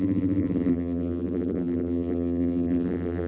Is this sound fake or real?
fake